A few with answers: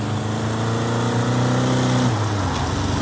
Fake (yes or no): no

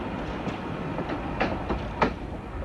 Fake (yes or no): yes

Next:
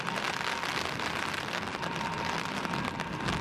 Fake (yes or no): no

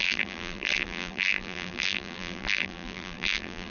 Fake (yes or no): yes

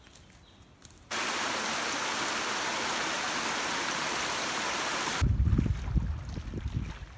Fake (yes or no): no